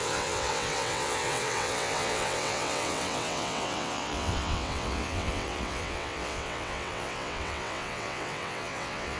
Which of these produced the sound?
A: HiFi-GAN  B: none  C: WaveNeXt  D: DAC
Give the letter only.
C